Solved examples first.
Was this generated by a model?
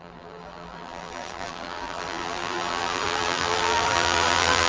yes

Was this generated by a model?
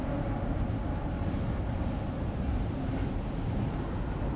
no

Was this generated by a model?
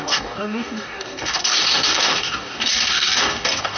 yes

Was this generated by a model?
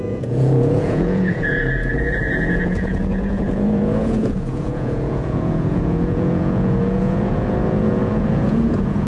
yes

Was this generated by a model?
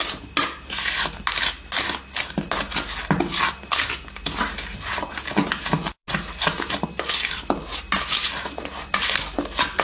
no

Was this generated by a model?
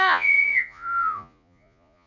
yes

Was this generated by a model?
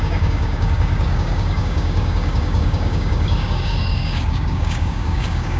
yes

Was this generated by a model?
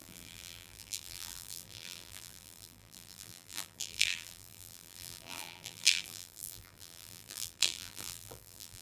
yes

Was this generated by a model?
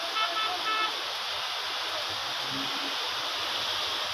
no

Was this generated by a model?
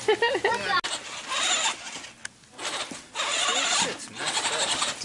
no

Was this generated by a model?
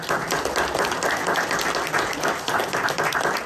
no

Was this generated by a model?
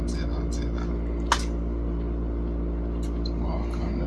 no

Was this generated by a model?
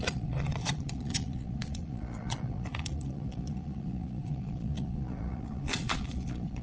yes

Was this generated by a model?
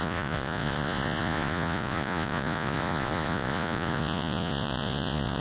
yes